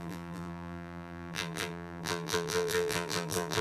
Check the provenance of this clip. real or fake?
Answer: fake